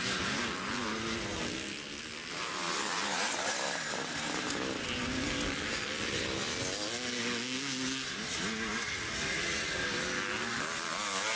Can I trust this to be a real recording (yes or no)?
yes